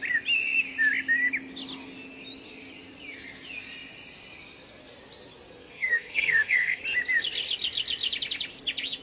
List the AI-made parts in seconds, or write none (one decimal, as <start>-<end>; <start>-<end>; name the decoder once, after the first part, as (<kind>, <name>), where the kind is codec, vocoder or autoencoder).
5.6-6.8 (codec, SNAC)